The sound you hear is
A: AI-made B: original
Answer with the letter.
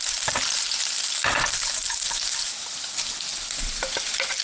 B